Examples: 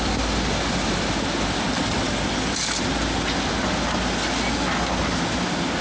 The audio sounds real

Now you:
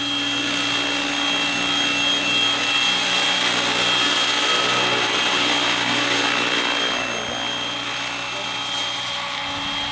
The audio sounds real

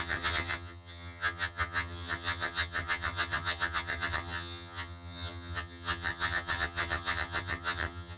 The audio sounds fake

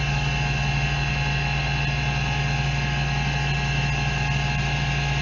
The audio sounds real